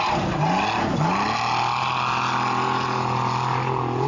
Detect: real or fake real